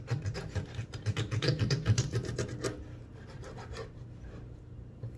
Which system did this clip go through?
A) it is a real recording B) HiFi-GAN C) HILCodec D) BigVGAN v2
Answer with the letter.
D